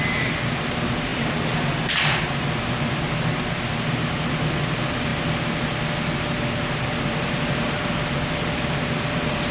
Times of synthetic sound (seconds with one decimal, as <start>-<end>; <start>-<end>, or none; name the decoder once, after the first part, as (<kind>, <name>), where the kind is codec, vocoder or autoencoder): none